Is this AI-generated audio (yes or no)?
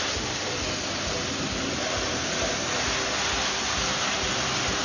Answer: no